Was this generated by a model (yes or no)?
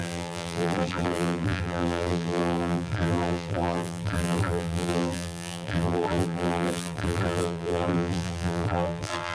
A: yes